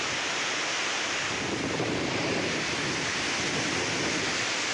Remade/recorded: recorded